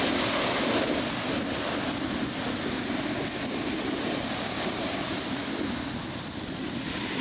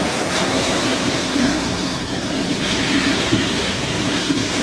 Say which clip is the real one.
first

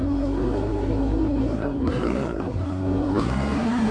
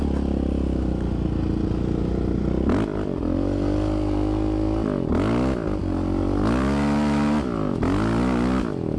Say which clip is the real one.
second